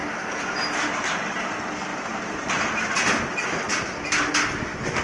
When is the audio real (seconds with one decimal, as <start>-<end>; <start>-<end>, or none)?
1.5-1.9; 2.8-5.0